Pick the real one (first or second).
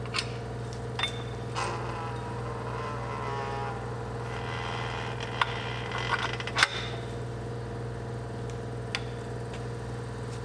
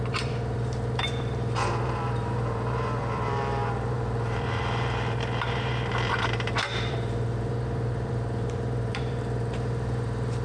first